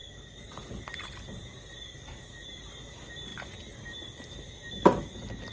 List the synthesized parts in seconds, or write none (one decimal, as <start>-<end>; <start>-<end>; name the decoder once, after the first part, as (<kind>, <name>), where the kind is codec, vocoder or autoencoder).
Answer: none